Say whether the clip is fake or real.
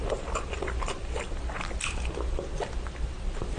real